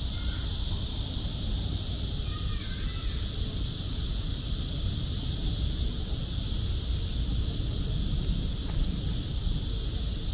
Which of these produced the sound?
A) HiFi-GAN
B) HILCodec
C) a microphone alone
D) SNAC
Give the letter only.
C